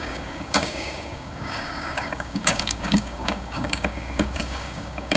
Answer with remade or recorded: remade